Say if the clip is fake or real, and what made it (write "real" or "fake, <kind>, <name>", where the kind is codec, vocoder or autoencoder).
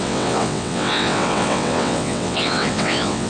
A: fake, vocoder, WaveNeXt